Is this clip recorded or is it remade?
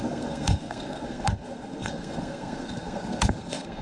remade